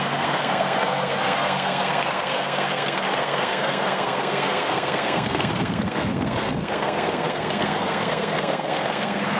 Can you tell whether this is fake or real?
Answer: fake